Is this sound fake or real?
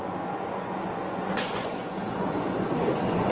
fake